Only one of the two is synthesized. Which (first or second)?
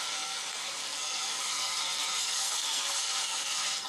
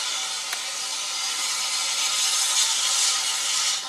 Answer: first